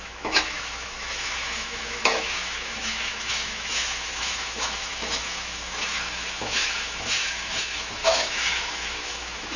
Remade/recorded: remade